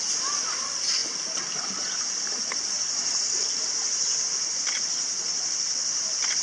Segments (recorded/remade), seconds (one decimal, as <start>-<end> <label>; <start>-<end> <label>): 0.0-6.4 remade